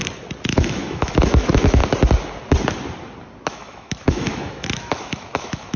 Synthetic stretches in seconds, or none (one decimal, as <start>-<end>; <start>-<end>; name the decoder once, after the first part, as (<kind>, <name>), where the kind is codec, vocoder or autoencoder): 0.5-1.8 (autoencoder, DAC-VAE); 3.5-5.8

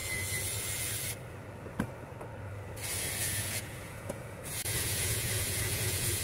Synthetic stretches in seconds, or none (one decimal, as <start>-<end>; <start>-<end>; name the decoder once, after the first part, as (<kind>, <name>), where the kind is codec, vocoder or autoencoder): 3.2-6.2 (vocoder, Vocos)

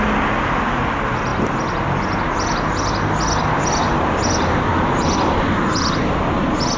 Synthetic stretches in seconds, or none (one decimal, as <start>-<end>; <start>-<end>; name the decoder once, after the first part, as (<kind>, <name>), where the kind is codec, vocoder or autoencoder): none

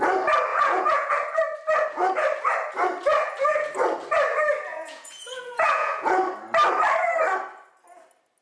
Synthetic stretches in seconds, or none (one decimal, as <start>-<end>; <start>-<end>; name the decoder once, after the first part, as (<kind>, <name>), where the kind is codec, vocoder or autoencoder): 0.5-1.1 (vocoder, Vocos); 4.7-6.2

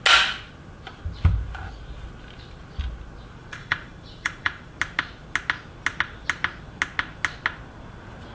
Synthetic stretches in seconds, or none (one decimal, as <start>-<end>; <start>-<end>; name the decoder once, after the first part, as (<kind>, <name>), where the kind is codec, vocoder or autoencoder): 3.4-4.7 (vocoder, BigVGAN v2)

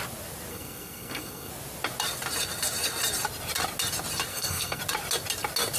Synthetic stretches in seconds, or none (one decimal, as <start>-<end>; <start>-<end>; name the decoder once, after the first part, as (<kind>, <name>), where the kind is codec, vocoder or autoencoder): 0.5-1.5 (codec, SNAC); 4.3-4.8

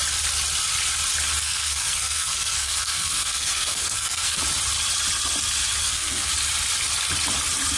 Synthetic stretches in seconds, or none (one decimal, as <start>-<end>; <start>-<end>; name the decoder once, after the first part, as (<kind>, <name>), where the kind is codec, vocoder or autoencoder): 1.4-4.4 (codec, SNAC); 5.8-6.3